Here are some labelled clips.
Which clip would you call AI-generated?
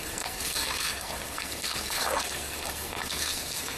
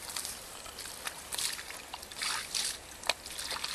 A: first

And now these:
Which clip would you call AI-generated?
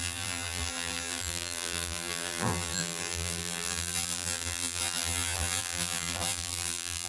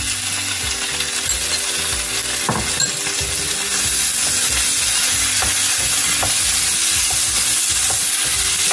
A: first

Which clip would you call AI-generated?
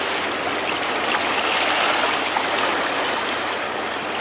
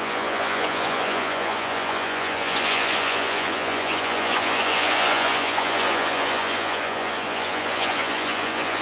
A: second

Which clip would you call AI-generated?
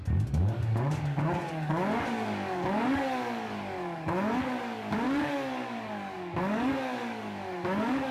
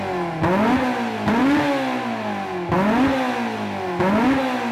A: first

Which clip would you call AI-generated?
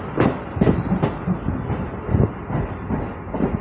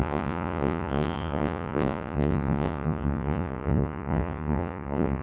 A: second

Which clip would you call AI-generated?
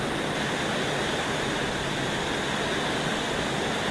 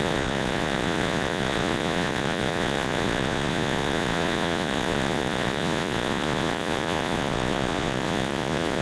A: second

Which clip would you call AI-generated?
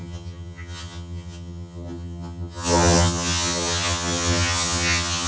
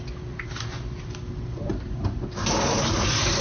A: first